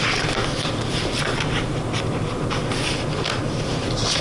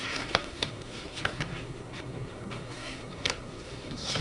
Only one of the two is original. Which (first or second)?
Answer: first